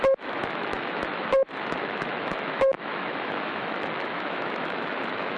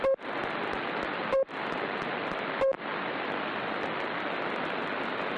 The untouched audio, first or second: second